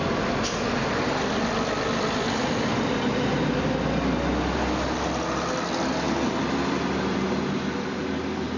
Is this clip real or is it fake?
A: real